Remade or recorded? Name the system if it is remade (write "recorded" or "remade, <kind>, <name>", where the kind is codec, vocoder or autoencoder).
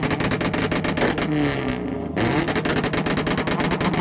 recorded